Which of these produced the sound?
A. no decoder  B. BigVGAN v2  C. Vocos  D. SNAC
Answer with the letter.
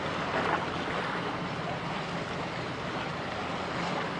A